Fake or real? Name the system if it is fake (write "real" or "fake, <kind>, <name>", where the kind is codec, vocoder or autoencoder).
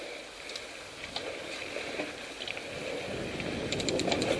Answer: real